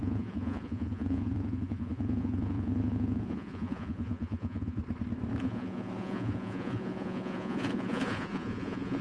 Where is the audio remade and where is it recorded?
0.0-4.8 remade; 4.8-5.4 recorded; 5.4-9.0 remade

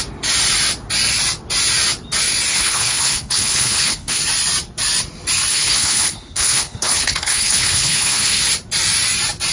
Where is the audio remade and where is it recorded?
0.0-2.5 recorded; 2.5-4.2 remade; 4.2-5.5 recorded; 5.5-8.4 remade; 8.4-9.5 recorded